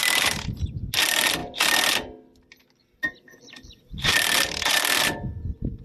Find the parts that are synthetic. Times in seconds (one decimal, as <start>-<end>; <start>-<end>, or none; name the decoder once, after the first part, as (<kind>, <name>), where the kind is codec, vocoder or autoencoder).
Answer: none